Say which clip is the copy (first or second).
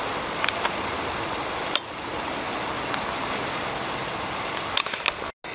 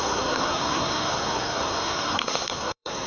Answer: second